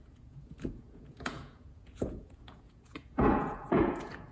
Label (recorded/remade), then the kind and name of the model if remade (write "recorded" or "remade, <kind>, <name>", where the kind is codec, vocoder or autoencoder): remade, vocoder, Vocos